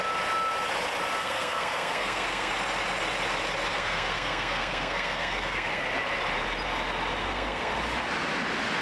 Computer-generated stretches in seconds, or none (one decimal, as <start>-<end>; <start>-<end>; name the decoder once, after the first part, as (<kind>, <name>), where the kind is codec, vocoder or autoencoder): 1.2-2.5 (codec, SNAC); 3.7-5.8; 7.2-7.7